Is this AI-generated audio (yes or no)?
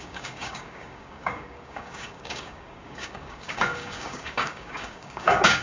yes